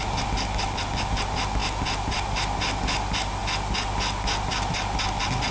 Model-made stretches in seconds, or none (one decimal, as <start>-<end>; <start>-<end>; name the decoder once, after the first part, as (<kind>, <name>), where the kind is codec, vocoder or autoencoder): none